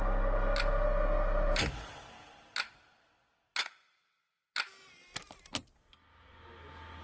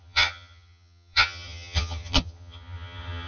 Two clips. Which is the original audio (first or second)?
first